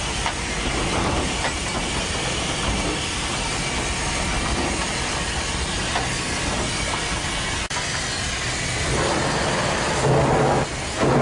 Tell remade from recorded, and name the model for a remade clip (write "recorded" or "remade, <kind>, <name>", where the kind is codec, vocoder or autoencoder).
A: recorded